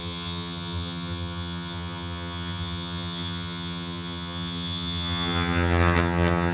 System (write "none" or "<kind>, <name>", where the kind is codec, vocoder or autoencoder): vocoder, HiFi-GAN